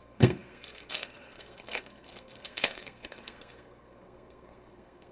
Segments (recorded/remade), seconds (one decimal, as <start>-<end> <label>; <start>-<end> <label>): 0.0-5.1 remade